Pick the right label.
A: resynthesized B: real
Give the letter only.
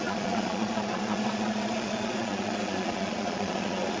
A